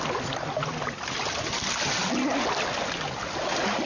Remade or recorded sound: recorded